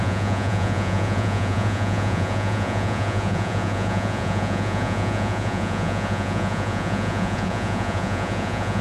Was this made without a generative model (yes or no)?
no